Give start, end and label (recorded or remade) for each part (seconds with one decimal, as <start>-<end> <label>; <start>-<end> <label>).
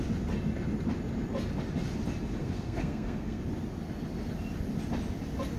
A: 0.0-2.4 recorded; 2.4-3.4 remade; 3.4-5.6 recorded